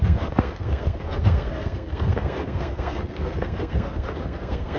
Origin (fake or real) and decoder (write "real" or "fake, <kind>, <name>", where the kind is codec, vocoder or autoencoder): fake, codec, SNAC